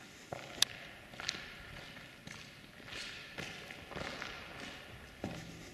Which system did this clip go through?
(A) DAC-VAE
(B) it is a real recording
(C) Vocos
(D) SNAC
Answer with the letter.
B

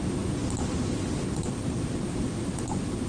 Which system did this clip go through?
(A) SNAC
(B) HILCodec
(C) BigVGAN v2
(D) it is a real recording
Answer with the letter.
D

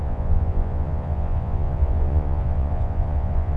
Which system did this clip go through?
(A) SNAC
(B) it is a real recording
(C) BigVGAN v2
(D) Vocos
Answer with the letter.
D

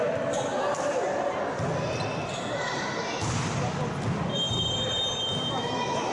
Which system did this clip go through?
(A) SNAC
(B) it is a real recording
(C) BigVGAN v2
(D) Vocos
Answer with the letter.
B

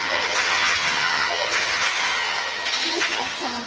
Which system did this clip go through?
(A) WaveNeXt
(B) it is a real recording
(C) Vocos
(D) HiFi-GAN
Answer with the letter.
D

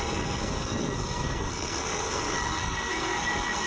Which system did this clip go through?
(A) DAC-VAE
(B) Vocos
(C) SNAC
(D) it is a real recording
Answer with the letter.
C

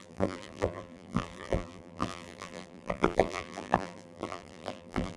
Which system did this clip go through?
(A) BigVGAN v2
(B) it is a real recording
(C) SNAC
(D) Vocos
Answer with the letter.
A